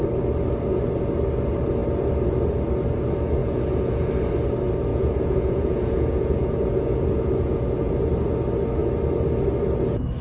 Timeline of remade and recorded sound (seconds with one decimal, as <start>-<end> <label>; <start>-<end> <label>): 0.0-3.4 recorded; 3.4-4.1 remade; 4.1-4.9 recorded; 4.9-7.9 remade; 7.9-10.2 recorded